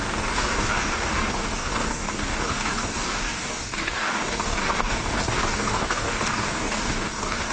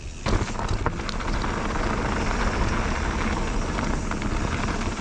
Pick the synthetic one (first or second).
first